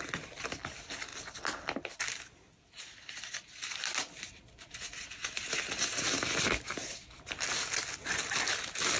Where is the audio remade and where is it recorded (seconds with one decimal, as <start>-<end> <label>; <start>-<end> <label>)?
0.0-9.0 recorded